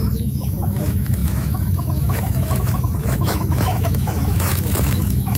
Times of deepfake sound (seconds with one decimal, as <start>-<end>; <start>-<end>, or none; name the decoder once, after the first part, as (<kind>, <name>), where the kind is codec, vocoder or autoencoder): 0.0-5.4 (autoencoder, DAC-VAE)